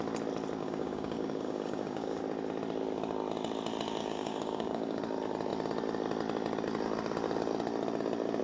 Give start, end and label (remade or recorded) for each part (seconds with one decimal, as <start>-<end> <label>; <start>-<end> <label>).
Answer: 0.0-0.6 recorded; 0.6-2.2 remade; 2.2-4.0 recorded; 4.0-5.0 remade; 5.0-8.4 recorded